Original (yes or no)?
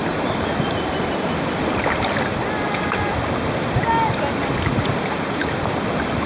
yes